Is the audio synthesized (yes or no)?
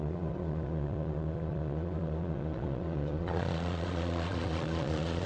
yes